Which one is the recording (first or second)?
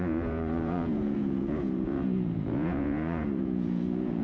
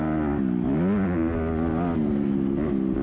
second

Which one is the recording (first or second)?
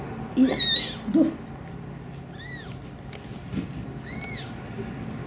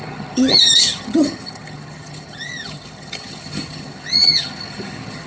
first